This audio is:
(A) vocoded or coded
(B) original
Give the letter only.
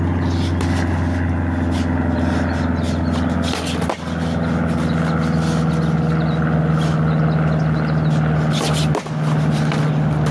B